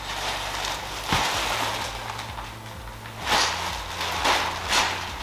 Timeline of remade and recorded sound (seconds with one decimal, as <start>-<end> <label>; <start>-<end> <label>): 0.0-1.7 remade; 1.7-4.8 recorded; 4.8-5.2 remade